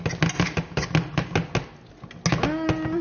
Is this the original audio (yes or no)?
yes